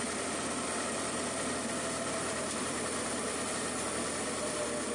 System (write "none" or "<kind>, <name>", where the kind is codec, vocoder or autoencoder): vocoder, BigVGAN v2